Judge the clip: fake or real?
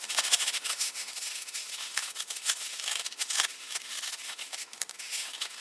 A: fake